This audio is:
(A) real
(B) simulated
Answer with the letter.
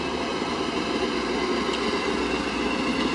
A